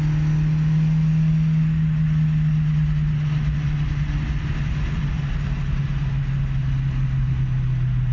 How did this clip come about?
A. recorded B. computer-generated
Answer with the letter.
A